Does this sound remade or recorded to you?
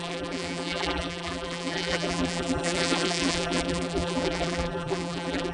remade